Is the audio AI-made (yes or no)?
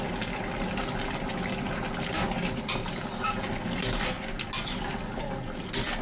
no